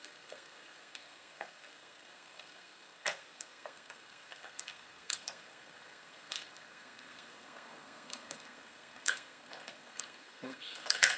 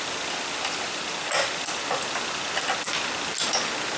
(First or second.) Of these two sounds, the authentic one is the second